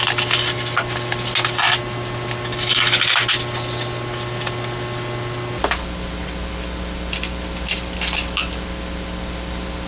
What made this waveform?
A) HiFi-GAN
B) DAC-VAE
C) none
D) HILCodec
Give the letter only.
C